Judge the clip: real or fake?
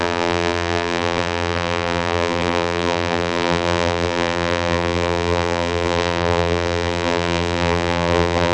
fake